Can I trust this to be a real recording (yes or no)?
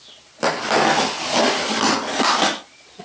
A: yes